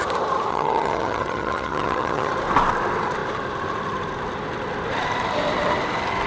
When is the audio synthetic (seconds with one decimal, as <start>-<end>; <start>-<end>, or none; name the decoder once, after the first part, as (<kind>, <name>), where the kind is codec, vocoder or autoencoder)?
0.5-2.3 (vocoder, HiFi-GAN)